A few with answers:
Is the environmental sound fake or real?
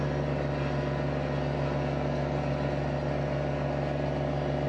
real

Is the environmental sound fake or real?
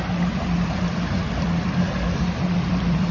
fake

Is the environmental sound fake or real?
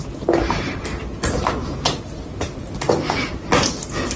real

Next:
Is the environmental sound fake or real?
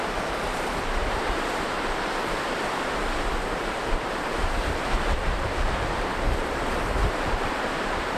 fake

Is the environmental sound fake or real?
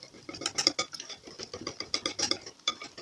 real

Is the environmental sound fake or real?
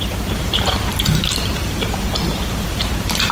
fake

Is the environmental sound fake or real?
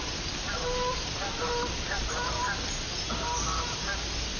real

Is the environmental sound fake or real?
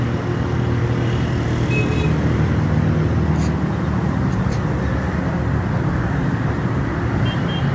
fake